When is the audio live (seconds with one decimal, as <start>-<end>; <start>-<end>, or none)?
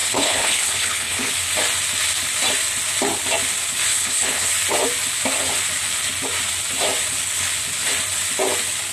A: 1.3-3.9; 4.5-8.9